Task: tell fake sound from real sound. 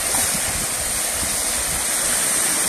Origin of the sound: real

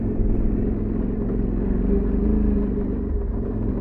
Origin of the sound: real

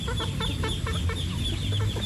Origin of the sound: real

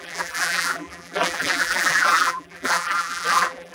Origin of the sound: fake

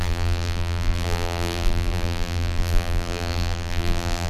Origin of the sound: fake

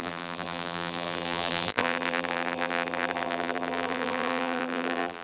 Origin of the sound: fake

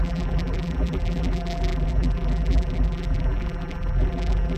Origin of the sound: fake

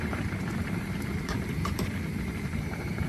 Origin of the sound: fake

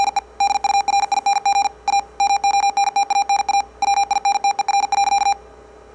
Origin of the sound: real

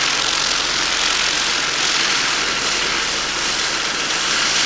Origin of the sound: real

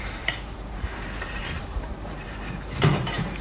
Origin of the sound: fake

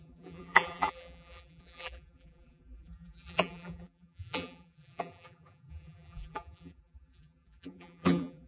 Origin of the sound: fake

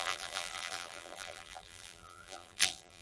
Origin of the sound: fake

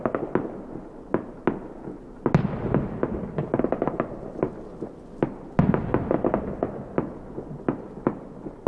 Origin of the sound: real